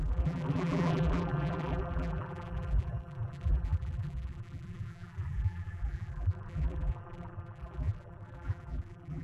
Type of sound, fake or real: fake